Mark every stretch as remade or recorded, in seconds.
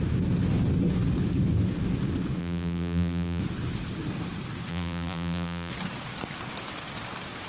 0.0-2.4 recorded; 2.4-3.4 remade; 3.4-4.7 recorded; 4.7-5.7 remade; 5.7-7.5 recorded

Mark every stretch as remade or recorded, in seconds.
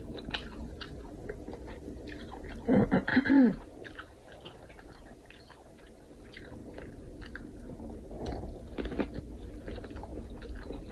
0.0-3.1 recorded; 3.1-5.4 remade; 5.4-10.9 recorded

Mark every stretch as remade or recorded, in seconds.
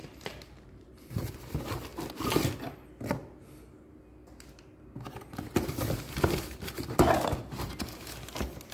0.0-1.3 remade; 1.3-8.7 recorded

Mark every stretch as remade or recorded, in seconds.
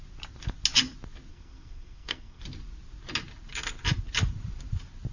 0.0-1.3 recorded; 1.3-2.4 remade; 2.4-5.1 recorded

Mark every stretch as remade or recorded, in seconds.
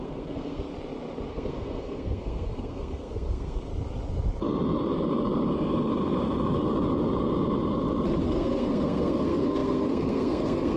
0.0-0.7 remade; 0.7-1.3 recorded; 1.3-3.7 remade; 3.7-8.2 recorded; 8.2-10.8 remade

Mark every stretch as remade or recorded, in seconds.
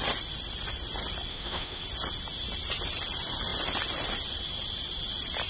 0.0-1.3 recorded; 1.3-1.8 remade; 1.8-5.5 recorded